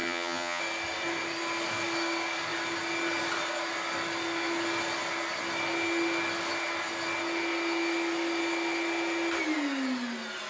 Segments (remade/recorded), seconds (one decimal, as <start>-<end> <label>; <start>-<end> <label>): 0.0-0.6 remade; 0.6-10.5 recorded